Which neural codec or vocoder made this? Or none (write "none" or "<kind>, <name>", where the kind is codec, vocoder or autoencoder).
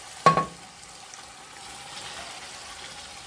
none